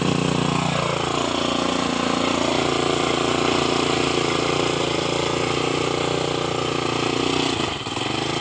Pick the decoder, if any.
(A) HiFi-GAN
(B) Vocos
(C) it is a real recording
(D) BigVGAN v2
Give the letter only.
C